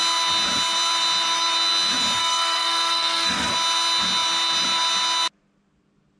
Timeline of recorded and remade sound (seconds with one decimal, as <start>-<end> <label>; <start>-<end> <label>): 0.0-2.2 recorded; 2.2-3.5 remade; 3.5-6.2 recorded